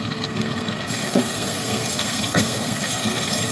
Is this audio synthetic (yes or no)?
yes